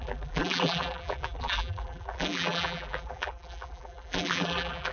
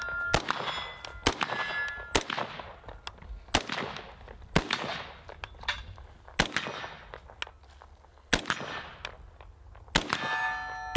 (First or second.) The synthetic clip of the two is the first